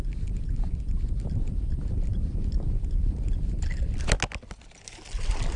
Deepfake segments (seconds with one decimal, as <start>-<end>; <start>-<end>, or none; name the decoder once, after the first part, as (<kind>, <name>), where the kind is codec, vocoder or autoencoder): none